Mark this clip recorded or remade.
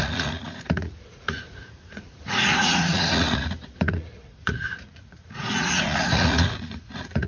remade